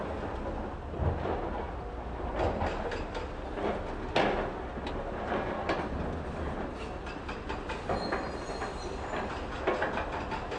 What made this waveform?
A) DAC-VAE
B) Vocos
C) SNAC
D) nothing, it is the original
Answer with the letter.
D